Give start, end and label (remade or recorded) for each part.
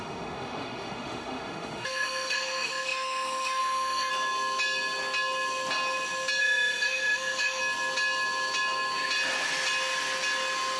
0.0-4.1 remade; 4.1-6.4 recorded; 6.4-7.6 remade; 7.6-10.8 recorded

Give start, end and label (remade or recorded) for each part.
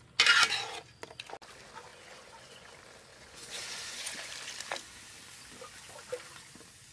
0.0-1.9 recorded; 1.9-2.7 remade; 2.7-3.1 recorded; 3.1-4.3 remade; 4.3-6.9 recorded